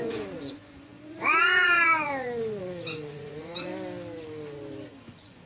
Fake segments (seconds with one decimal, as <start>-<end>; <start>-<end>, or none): 0.0-3.7; 5.0-5.5